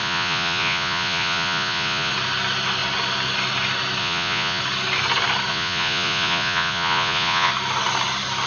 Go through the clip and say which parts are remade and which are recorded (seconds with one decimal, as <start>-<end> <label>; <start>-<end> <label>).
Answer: 0.0-2.1 remade; 2.1-4.0 recorded; 4.0-4.6 remade; 4.6-5.5 recorded; 5.5-7.5 remade; 7.5-8.5 recorded